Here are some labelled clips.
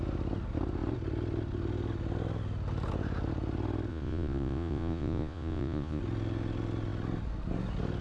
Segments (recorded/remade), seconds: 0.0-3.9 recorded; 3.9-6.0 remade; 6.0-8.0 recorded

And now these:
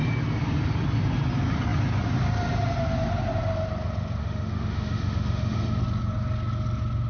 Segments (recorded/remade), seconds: 0.0-4.2 recorded; 4.2-5.8 remade; 5.8-7.1 recorded

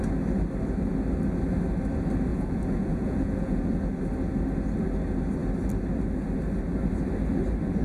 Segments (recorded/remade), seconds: 0.0-2.3 recorded; 2.3-3.9 remade; 3.9-7.8 recorded

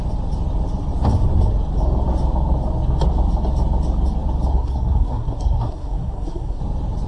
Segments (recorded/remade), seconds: 0.0-4.5 recorded; 4.5-6.6 remade; 6.6-7.1 recorded

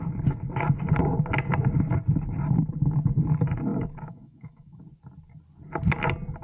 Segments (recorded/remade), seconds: 0.0-3.7 recorded; 3.7-4.8 remade; 4.8-6.4 recorded

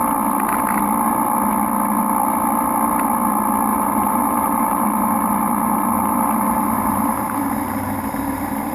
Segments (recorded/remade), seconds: 0.0-3.7 recorded; 3.7-8.7 remade

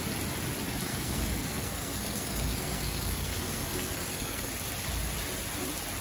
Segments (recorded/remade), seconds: 0.0-0.9 recorded; 0.9-4.5 remade; 4.5-6.0 recorded